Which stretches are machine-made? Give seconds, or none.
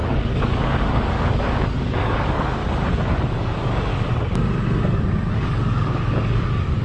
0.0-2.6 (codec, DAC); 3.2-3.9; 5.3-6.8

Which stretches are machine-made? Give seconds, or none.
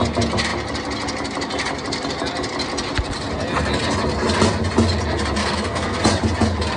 5.4-6.0 (codec, SNAC)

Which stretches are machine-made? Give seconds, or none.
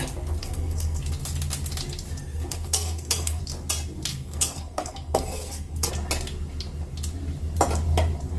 0.4-1.0 (codec, SNAC); 2.2-3.4; 4.1-5.9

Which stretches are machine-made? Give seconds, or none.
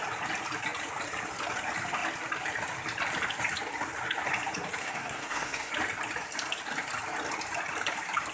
4.8-5.7 (codec, SNAC)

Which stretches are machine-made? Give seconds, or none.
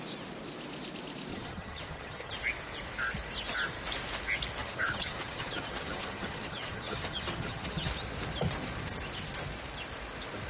1.3-2.3 (vocoder, HiFi-GAN); 4.6-7.9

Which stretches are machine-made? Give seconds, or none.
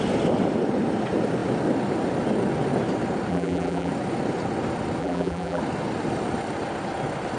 3.3-3.9 (vocoder, BigVGAN v2); 5.0-5.6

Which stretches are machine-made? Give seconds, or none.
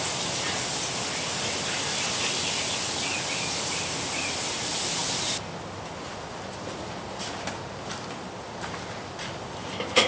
none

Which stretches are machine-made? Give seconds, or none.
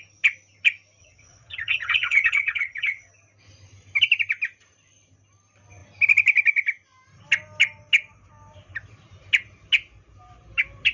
1.0-3.1 (vocoder, HiFi-GAN)